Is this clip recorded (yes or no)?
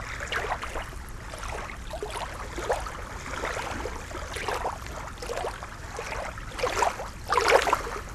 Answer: yes